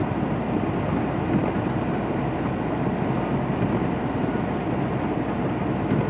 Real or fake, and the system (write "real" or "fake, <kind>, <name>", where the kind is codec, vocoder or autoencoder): real